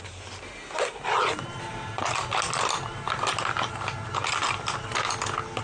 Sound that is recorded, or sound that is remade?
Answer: recorded